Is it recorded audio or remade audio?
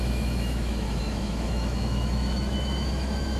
remade